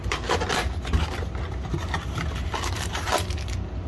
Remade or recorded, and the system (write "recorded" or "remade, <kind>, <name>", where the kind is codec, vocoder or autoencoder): recorded